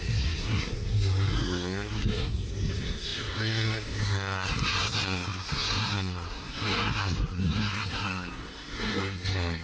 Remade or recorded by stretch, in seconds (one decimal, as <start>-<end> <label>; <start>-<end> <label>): 0.0-9.6 remade